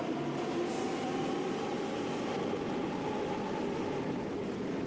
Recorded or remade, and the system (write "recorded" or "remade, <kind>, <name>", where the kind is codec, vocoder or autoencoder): recorded